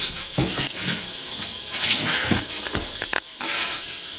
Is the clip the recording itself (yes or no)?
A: no